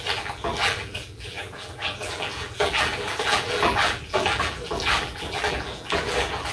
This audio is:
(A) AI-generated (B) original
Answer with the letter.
A